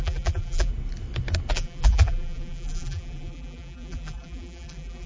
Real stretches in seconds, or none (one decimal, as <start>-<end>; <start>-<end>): 0.7-1.5